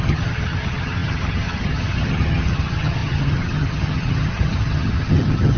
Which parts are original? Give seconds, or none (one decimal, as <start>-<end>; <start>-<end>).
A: none